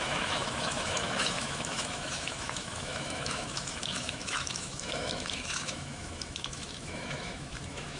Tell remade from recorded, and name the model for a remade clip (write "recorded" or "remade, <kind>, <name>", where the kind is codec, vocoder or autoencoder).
remade, autoencoder, DAC-VAE